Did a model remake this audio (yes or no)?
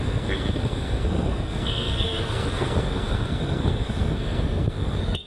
yes